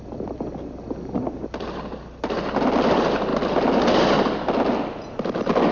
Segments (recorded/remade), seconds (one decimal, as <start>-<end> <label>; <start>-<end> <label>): 0.0-5.7 recorded